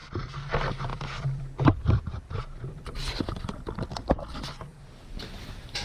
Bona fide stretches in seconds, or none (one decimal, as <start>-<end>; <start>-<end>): 0.0-0.9; 4.1-4.7; 5.2-5.8